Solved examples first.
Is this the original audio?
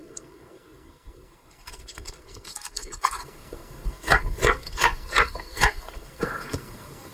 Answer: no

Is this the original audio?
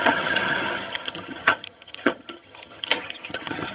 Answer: no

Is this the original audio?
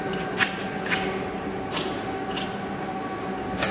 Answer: yes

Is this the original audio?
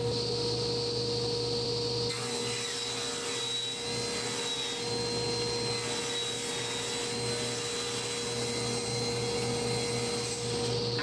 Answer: yes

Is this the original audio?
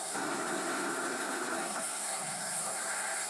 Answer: no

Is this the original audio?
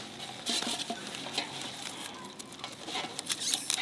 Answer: yes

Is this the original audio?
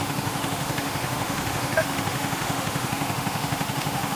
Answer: no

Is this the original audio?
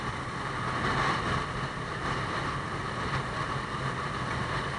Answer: yes